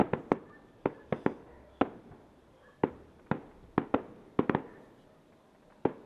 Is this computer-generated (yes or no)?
no